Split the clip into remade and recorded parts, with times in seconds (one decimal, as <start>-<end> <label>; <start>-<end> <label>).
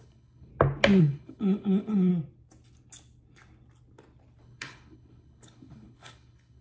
0.0-0.5 remade; 0.5-1.0 recorded; 1.0-2.1 remade; 2.1-4.4 recorded; 4.4-6.6 remade